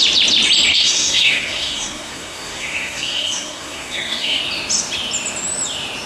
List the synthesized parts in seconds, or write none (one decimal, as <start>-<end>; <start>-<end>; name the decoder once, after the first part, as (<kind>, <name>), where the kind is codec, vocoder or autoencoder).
0.7-4.4 (codec, SNAC)